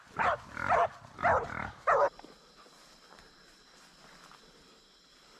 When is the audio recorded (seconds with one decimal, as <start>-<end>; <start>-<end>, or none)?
0.0-5.4